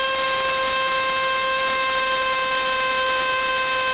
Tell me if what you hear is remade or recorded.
recorded